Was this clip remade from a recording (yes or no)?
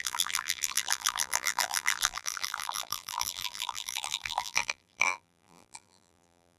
yes